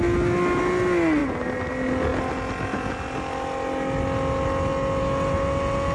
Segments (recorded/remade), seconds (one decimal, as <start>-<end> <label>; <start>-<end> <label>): 0.0-5.9 recorded